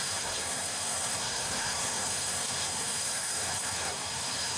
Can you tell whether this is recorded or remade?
remade